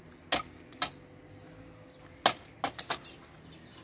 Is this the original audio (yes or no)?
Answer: yes